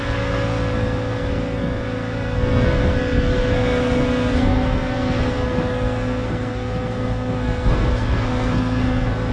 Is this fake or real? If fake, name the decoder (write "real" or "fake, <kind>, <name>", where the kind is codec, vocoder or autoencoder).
fake, codec, SNAC